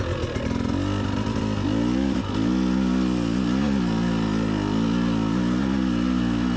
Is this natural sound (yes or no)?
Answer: yes